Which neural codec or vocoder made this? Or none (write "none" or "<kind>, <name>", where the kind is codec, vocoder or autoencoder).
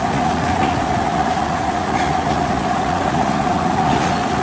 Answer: vocoder, Vocos